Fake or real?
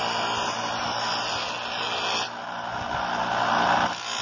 real